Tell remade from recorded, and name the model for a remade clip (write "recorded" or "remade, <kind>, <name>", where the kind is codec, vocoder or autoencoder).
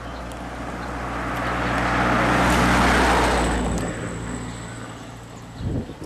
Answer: recorded